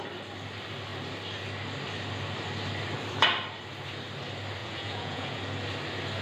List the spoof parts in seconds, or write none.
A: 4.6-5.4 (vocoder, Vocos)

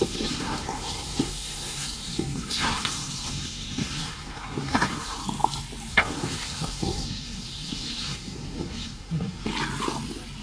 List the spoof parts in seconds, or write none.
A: 0.0-5.2 (codec, SNAC); 5.9-9.5

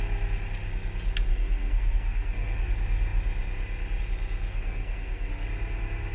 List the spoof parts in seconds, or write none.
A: 1.3-2.7 (codec, SNAC); 4.5-5.3

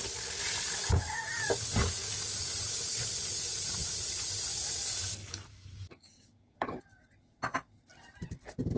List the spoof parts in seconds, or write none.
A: 0.8-1.3 (codec, DAC); 2.0-2.5; 5.2-6.8

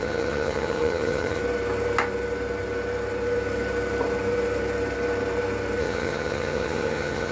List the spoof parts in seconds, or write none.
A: 0.0-1.4 (vocoder, HiFi-GAN); 5.8-7.3

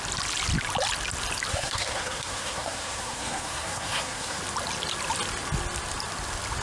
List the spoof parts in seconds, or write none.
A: 1.5-4.4 (codec, SNAC)

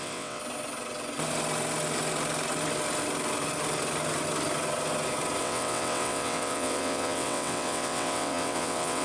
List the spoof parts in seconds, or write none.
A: 0.0-0.4 (vocoder, WaveNeXt); 5.4-9.0